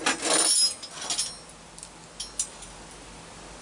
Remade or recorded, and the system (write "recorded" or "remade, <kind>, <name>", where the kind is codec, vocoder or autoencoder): recorded